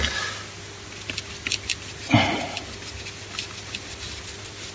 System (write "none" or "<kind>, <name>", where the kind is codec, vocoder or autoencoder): none